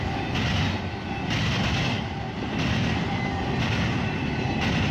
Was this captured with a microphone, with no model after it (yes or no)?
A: yes